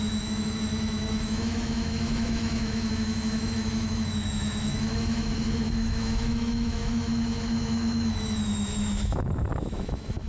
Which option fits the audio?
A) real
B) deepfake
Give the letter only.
B